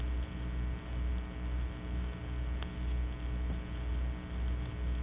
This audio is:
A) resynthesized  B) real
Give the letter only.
B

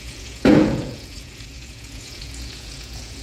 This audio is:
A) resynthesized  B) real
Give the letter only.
A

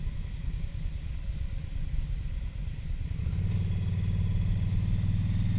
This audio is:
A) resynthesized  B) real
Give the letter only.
B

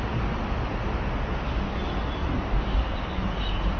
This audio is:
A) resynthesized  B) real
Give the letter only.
B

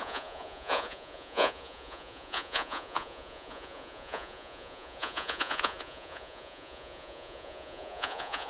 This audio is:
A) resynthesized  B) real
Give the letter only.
A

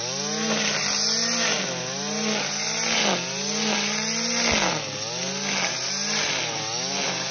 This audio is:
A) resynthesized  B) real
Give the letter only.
B